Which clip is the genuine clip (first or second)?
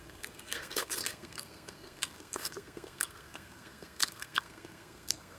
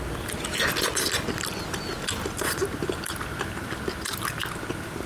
second